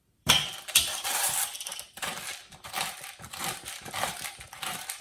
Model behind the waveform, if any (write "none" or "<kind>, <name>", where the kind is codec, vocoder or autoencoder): vocoder, BigVGAN v2